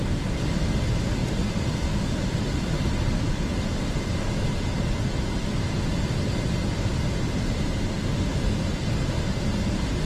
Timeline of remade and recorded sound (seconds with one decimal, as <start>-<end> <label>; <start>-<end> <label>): 0.0-1.2 recorded; 1.2-4.2 remade; 4.2-8.3 recorded; 8.3-8.9 remade; 8.9-10.0 recorded